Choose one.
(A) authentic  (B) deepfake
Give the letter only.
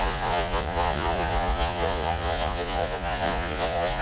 B